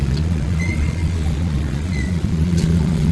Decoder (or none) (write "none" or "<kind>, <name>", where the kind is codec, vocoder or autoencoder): vocoder, Vocos